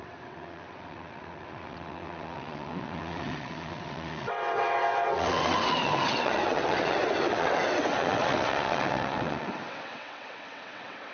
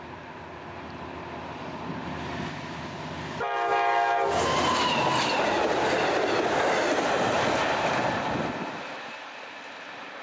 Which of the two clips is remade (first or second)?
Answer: first